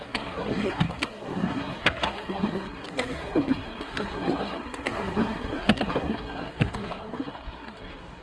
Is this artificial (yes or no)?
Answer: yes